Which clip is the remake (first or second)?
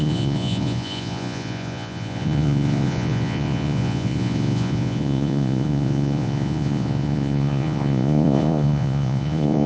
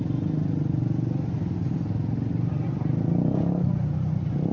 first